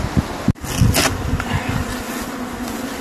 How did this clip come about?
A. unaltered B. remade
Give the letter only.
A